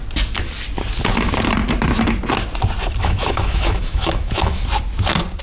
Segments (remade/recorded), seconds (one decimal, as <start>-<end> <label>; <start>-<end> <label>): 0.0-3.0 recorded; 3.0-4.6 remade; 4.6-5.4 recorded